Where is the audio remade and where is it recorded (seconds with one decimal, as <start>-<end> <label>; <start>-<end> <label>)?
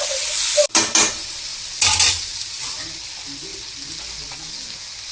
0.0-5.1 recorded